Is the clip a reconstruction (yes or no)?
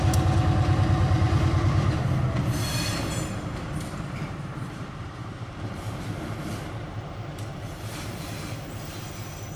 yes